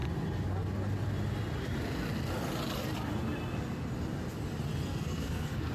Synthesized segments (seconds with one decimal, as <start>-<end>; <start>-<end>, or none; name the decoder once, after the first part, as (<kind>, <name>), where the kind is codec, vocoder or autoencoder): 4.9-5.7 (codec, SNAC)